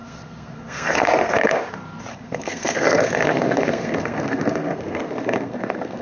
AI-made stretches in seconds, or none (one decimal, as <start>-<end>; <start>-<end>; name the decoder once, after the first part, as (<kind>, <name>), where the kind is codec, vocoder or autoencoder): 0.0-1.6 (codec, SNAC); 2.1-6.0